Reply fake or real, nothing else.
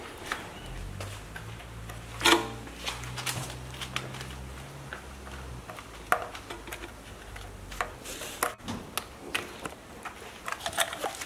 real